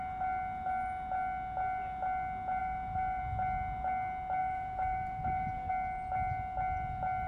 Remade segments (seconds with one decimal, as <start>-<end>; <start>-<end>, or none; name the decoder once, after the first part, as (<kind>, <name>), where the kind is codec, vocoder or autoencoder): 2.6-3.2 (vocoder, Vocos); 4.4-5.7